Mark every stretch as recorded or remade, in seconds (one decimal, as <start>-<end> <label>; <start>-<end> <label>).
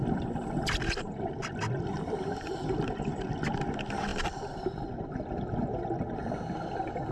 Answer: 0.0-7.1 recorded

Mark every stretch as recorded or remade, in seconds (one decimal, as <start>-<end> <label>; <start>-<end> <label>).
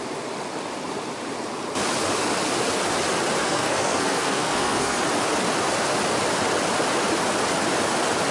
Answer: 0.0-3.4 recorded; 3.4-5.0 remade; 5.0-8.3 recorded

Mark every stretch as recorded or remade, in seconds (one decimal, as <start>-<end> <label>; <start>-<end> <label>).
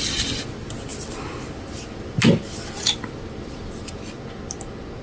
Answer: 0.0-5.0 recorded